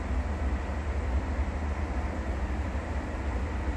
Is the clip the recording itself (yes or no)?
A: yes